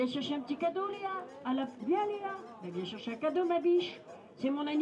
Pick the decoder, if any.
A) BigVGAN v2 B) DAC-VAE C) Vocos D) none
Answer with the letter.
D